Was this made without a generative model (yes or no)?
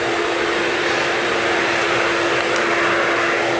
yes